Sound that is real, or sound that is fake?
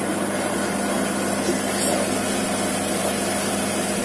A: real